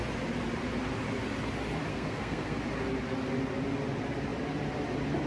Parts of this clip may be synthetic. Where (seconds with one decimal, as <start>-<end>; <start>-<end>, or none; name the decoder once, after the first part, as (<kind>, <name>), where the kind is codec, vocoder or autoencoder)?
1.9-2.6 (codec, SNAC)